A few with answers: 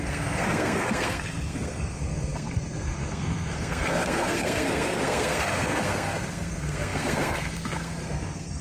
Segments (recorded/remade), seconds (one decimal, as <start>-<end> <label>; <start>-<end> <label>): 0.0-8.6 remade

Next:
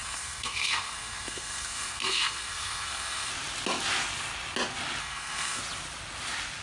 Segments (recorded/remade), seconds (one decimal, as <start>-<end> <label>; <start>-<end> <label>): 0.0-3.3 remade; 3.3-5.0 recorded; 5.0-5.6 remade; 5.6-6.6 recorded

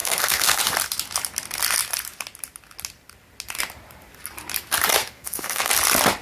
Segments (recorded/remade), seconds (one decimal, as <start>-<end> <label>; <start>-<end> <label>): 0.0-0.6 remade; 0.6-5.0 recorded; 5.0-5.7 remade; 5.7-6.2 recorded